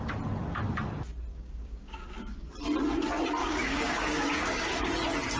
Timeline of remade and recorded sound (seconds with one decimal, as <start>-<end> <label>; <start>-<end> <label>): 0.0-1.3 recorded; 1.3-2.5 remade; 2.5-3.4 recorded; 3.4-4.9 remade; 4.9-5.4 recorded